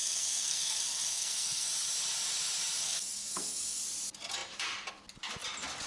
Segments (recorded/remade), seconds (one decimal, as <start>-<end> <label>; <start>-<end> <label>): 0.0-1.7 remade; 1.7-2.8 recorded; 2.8-3.8 remade; 3.8-5.9 recorded